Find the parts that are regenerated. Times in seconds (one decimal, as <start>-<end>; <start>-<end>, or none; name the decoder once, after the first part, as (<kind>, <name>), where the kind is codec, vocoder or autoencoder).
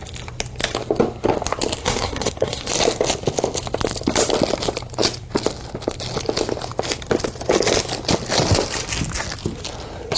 1.8-2.7 (codec, SNAC)